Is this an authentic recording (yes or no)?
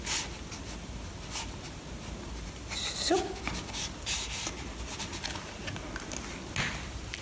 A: yes